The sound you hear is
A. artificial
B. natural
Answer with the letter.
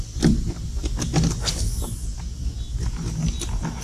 B